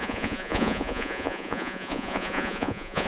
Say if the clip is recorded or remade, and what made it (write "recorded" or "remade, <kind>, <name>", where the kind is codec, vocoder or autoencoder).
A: remade, vocoder, Vocos